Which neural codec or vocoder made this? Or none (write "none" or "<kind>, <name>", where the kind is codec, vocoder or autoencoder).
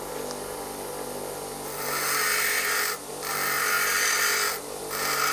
none